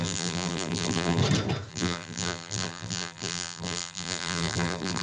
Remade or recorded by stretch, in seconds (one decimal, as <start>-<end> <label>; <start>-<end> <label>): 0.0-1.2 remade; 1.2-1.7 recorded; 1.7-5.0 remade